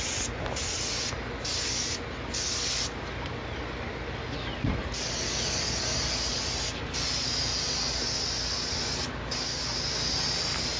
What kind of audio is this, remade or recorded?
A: recorded